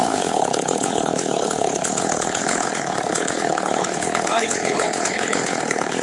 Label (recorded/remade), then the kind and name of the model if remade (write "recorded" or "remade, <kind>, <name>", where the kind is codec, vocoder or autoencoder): remade, codec, HILCodec